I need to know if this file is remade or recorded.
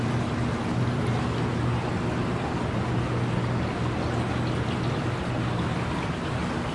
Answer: recorded